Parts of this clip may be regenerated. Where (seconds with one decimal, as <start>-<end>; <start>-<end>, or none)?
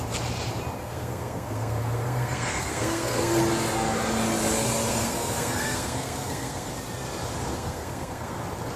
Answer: 0.8-3.4; 4.9-6.7; 7.5-8.4